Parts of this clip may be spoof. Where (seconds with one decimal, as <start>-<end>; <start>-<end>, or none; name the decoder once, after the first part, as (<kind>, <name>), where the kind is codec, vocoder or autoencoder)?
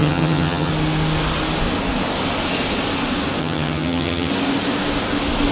0.0-0.7 (vocoder, HiFi-GAN); 3.4-4.3